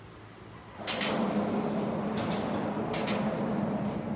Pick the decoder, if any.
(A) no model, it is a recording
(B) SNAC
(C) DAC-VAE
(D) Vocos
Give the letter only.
A